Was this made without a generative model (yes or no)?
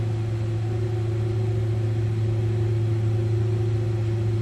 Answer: yes